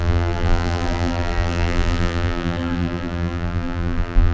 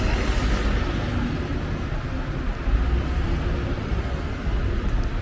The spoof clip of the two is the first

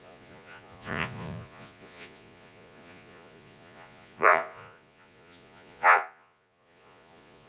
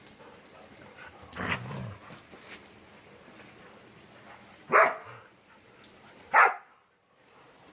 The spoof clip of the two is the first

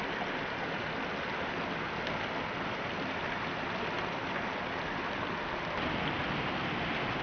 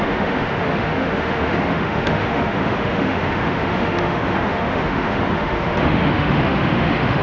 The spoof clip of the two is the second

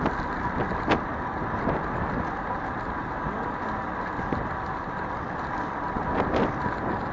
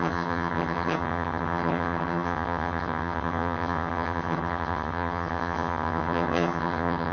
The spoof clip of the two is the second